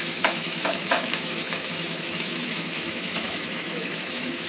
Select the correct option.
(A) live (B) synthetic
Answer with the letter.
B